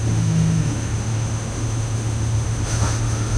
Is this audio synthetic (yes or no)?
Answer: yes